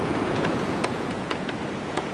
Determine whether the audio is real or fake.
fake